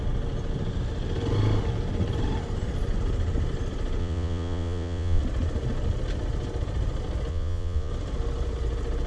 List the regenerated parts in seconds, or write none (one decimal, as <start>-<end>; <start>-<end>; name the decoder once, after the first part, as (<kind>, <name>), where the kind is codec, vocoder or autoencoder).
4.0-5.2 (vocoder, Vocos); 7.3-7.9